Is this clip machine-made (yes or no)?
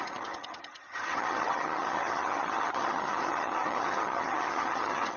yes